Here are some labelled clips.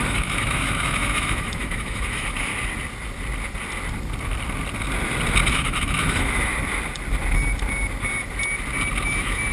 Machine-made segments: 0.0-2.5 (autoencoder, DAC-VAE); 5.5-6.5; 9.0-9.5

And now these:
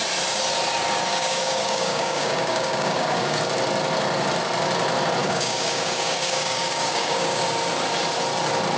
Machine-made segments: 1.1-3.4 (codec, DAC); 5.2-7.4